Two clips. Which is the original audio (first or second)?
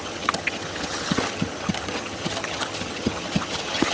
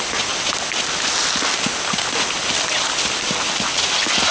second